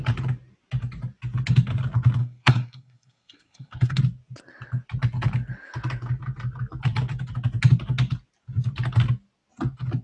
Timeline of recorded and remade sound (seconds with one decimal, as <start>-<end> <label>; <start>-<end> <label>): 0.0-2.2 recorded; 2.2-4.0 remade; 4.0-10.0 recorded